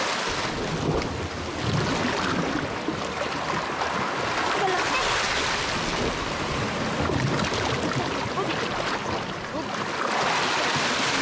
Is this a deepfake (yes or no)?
no